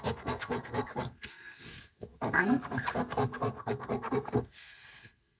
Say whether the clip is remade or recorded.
remade